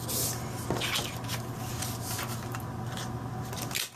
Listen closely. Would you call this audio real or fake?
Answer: real